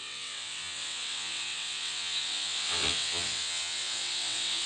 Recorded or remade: remade